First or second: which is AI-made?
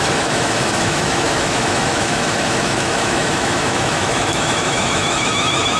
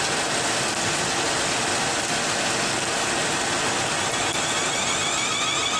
first